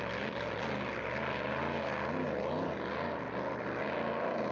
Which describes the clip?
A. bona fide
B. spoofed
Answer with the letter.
A